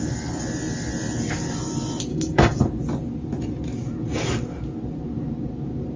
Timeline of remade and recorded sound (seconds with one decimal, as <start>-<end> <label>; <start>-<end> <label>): 0.0-2.1 recorded; 2.1-2.6 remade; 2.6-6.0 recorded